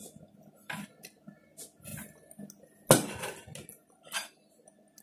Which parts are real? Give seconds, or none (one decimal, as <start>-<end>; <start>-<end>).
0.0-5.0